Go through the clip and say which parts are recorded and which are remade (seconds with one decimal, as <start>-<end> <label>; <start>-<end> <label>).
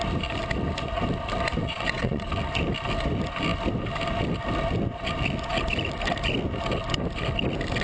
0.0-1.6 recorded; 1.6-2.3 remade; 2.3-7.8 recorded